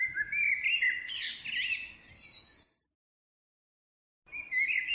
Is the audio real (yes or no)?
yes